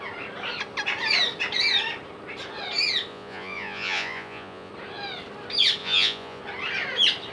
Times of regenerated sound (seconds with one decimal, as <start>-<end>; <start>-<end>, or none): 3.1-4.7; 5.8-6.4